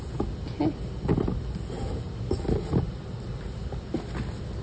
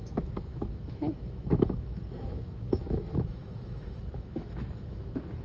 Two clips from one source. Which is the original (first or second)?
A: first